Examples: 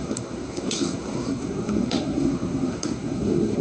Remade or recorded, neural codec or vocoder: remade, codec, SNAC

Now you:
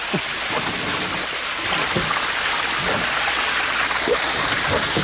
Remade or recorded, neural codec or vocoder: remade, vocoder, BigVGAN v2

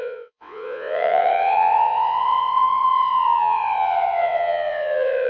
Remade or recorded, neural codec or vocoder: remade, vocoder, WaveNeXt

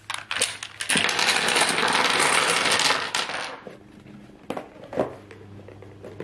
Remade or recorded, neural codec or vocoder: recorded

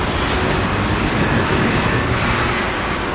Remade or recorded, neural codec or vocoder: recorded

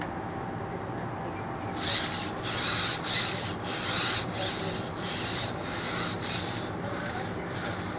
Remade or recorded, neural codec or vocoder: recorded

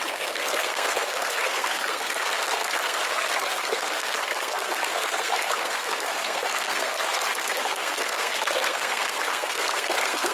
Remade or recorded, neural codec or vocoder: remade, codec, SNAC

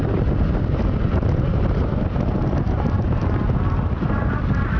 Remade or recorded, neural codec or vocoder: remade, vocoder, BigVGAN v2